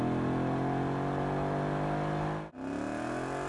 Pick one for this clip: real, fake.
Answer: real